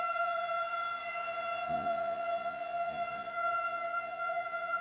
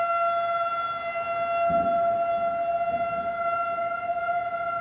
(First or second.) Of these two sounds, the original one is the second